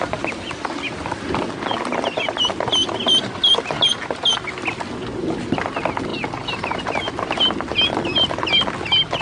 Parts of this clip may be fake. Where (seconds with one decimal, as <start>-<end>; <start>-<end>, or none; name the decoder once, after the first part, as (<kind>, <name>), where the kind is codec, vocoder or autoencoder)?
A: none